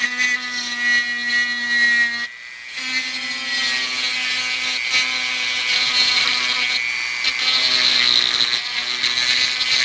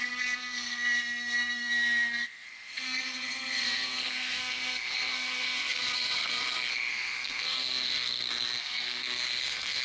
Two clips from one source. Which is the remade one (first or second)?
second